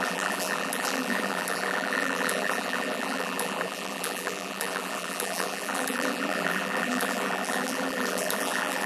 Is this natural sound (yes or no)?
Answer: no